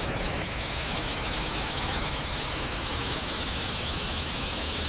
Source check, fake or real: fake